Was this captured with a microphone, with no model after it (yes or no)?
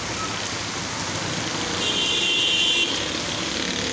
yes